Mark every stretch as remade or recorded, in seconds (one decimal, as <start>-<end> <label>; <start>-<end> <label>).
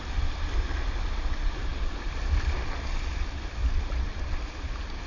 0.0-5.1 recorded